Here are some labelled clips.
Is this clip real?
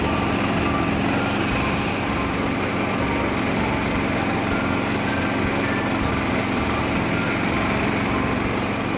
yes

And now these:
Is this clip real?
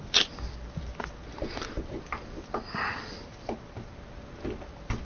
yes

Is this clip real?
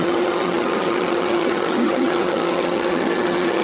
no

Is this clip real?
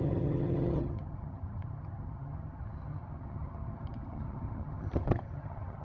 no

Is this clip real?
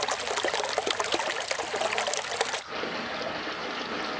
yes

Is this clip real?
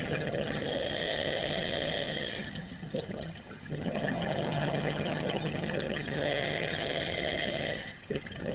no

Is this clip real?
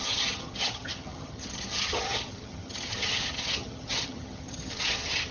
no